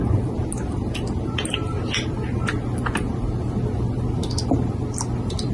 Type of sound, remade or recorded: recorded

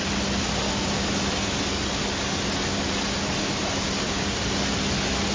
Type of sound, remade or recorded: recorded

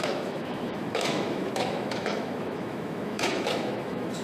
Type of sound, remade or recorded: remade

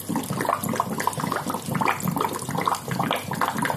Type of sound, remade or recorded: recorded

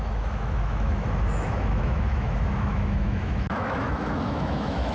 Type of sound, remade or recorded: remade